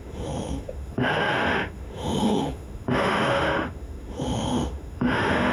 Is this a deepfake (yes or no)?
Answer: yes